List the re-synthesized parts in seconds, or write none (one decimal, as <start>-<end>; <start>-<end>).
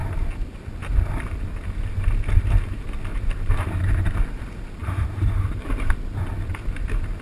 3.1-4.1; 4.8-5.9